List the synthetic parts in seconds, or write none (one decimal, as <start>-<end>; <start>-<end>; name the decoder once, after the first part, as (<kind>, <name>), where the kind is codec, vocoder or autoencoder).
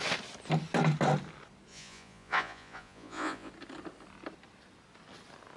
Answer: 1.7-3.5 (vocoder, Vocos)